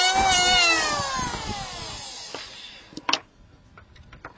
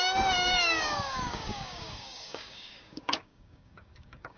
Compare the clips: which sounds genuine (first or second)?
first